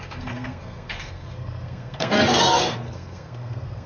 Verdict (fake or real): fake